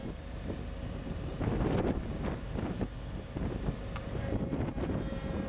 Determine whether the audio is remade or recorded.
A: remade